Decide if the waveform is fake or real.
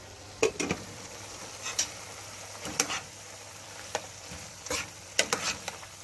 fake